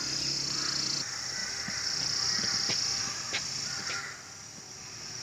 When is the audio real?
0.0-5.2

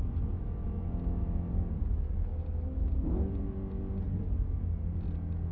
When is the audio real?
0.0-5.5

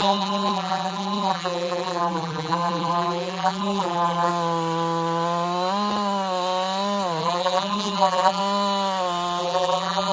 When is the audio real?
4.3-7.2; 8.4-9.4

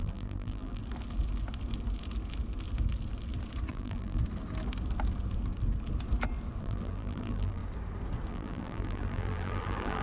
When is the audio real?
0.8-3.7; 4.2-6.6; 7.6-8.3

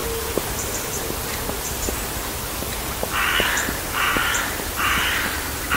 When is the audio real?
0.0-4.2

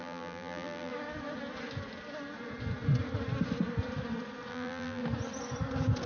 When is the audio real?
0.9-4.5; 5.0-6.1

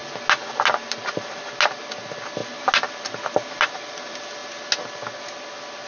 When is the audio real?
0.0-5.9

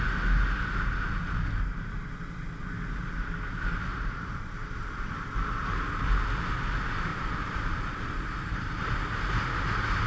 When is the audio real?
0.0-3.9; 5.1-7.1; 9.0-10.1